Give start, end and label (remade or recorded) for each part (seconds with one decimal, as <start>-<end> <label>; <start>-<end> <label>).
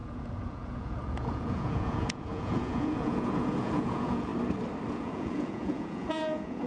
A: 0.0-4.3 remade; 4.3-4.9 recorded; 4.9-6.7 remade